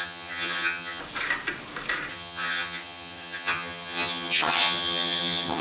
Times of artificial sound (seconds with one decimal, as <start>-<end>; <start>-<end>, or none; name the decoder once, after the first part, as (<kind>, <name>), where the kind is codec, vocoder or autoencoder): 0.0-1.0 (vocoder, HiFi-GAN); 2.1-5.6